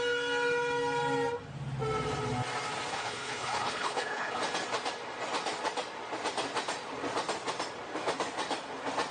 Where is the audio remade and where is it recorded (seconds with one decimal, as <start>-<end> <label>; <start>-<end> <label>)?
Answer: 0.0-2.9 recorded; 2.9-4.4 remade; 4.4-9.1 recorded